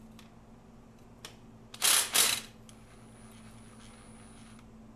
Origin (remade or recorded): recorded